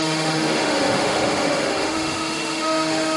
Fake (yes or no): yes